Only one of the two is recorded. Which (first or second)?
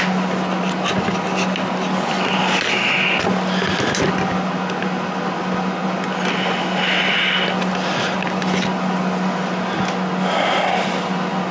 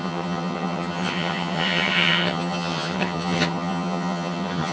first